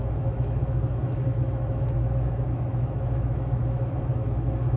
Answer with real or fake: fake